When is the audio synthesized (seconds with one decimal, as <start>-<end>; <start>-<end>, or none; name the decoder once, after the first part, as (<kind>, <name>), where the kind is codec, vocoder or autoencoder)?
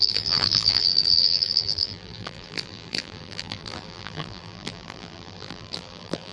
0.0-6.3 (vocoder, BigVGAN v2)